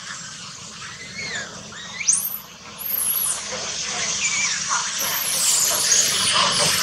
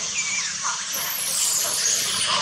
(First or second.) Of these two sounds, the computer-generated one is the second